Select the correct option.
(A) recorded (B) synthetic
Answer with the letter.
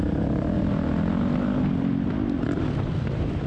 A